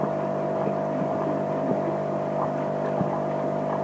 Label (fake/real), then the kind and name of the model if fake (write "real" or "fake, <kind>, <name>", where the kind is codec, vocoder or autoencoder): real